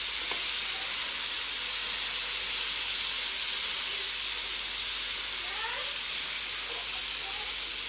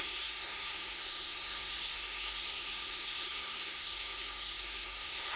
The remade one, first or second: second